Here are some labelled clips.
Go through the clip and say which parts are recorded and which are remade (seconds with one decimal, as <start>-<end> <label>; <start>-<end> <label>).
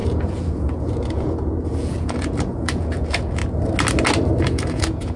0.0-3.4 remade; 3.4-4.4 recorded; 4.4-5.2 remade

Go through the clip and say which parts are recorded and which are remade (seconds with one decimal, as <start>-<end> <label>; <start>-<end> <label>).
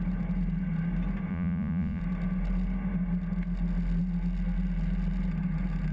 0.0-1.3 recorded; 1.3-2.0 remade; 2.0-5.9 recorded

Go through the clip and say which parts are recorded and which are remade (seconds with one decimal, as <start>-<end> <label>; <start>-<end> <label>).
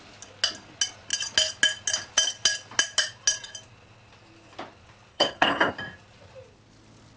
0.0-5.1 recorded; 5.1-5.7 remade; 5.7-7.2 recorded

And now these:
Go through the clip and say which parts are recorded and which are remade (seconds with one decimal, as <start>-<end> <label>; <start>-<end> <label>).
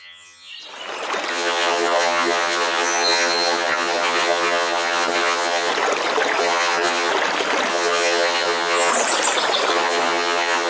0.0-0.5 remade; 0.5-1.3 recorded; 1.3-5.7 remade; 5.7-6.4 recorded; 6.4-7.1 remade; 7.1-7.7 recorded; 7.7-8.9 remade; 8.9-9.7 recorded; 9.7-10.7 remade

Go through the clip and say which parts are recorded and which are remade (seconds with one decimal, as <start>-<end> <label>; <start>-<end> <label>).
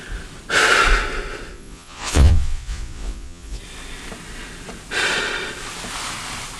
0.0-1.5 recorded; 1.5-3.6 remade; 3.6-6.6 recorded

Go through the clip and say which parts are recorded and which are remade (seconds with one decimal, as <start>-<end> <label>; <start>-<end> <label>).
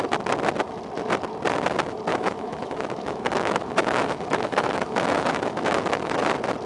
0.0-2.1 recorded; 2.1-6.1 remade; 6.1-6.7 recorded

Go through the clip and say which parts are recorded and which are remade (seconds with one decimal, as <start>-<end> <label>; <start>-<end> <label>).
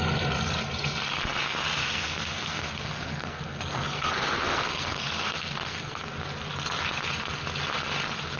0.0-1.8 recorded; 1.8-6.0 remade; 6.0-8.4 recorded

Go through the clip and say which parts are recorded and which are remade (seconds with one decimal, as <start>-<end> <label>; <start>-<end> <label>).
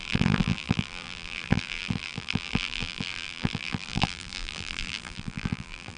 0.0-6.0 remade